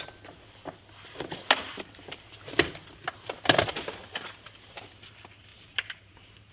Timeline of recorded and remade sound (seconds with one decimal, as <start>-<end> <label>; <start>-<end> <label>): 0.0-1.6 recorded; 1.6-2.5 remade; 2.5-4.0 recorded; 4.0-4.9 remade; 4.9-5.5 recorded; 5.5-6.5 remade